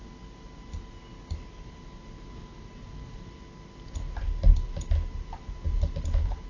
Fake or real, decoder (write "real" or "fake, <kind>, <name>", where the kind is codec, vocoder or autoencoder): real